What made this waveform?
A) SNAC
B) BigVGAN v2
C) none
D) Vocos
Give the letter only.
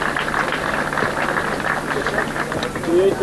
C